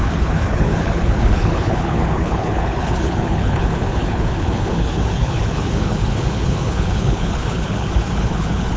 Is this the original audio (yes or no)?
no